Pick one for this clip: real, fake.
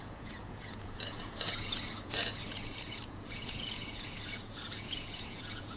fake